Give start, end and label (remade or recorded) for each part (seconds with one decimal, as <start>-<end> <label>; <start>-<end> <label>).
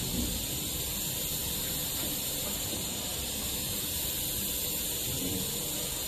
0.0-1.3 recorded; 1.3-2.7 remade; 2.7-3.1 recorded; 3.1-4.0 remade; 4.0-6.1 recorded